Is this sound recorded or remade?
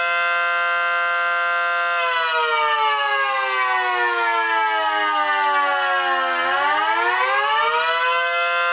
recorded